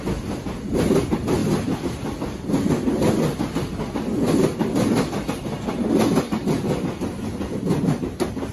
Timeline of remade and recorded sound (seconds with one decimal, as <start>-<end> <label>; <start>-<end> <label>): 0.0-8.5 recorded